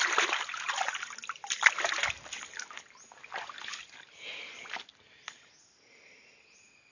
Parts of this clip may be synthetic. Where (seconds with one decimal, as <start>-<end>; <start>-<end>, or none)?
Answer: none